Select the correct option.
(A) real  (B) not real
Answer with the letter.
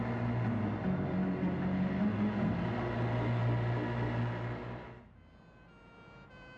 A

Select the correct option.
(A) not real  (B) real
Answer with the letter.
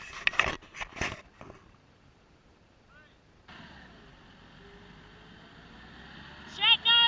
B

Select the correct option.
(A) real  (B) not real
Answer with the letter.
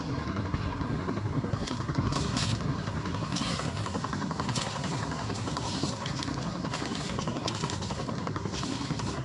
B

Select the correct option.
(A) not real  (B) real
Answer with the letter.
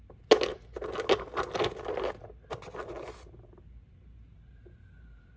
B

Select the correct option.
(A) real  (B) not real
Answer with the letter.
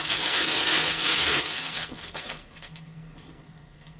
B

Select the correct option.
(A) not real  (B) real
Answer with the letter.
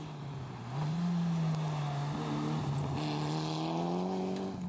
B